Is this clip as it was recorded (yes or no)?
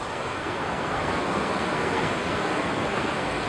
no